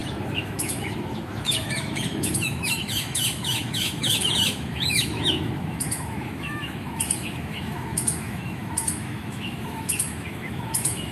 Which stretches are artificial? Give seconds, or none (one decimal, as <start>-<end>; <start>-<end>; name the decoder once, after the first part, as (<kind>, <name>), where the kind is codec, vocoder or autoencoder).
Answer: 0.0-11.1 (autoencoder, DAC-VAE)